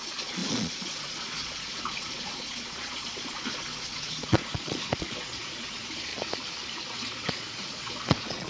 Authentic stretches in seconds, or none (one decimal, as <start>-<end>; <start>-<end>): 6.1-6.9